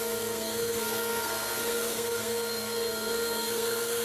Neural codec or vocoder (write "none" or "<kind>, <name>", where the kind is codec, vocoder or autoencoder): codec, SNAC